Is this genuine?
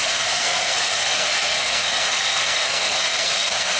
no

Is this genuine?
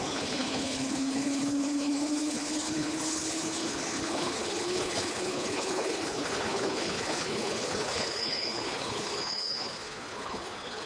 no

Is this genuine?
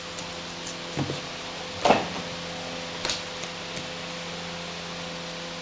yes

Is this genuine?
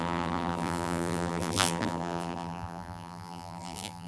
no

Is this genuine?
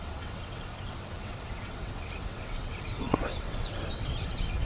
no